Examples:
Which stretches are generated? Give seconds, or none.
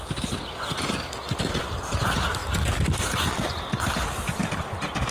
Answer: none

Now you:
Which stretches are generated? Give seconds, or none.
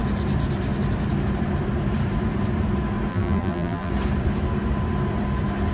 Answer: 3.1-3.9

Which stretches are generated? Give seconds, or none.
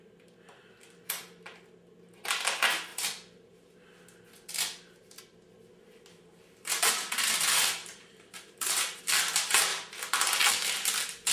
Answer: 7.8-9.0